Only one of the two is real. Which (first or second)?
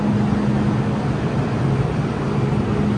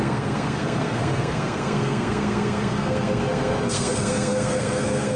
first